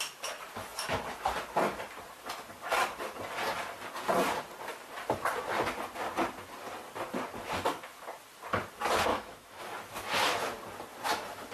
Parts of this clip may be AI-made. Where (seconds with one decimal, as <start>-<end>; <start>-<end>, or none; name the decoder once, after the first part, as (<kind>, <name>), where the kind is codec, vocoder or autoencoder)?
9.1-9.6 (autoencoder, DAC-VAE)